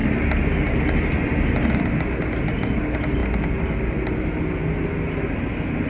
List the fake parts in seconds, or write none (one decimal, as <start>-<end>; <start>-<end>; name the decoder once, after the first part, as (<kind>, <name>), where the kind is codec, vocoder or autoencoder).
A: 0.0-1.4 (vocoder, BigVGAN v2)